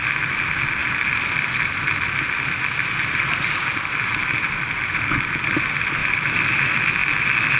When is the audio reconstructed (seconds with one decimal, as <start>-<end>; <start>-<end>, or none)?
0.8-5.4; 6.0-6.6